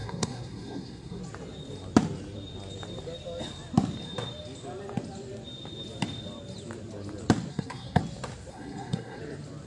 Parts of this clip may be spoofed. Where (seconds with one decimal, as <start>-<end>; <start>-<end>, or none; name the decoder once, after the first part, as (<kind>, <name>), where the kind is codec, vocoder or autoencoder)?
0.0-1.2 (codec, SNAC); 7.5-8.0; 8.5-9.2

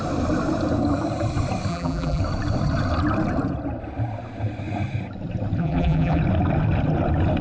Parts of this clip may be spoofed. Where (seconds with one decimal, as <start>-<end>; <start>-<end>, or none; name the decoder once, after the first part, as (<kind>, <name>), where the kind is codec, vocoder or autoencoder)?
1.7-2.2 (vocoder, BigVGAN v2); 5.6-6.2

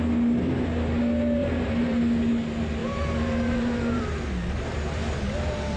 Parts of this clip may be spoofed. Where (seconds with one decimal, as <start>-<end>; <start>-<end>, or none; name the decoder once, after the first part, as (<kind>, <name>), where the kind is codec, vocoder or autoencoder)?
1.4-2.0 (vocoder, BigVGAN v2); 2.8-4.0

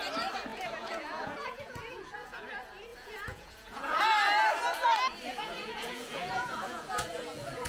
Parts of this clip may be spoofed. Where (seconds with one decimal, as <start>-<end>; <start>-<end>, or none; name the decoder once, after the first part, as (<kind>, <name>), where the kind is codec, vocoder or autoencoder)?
0.5-2.5 (vocoder, Vocos); 2.9-4.0; 5.3-7.7